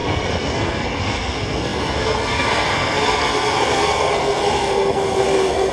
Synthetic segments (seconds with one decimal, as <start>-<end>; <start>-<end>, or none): 0.0-5.7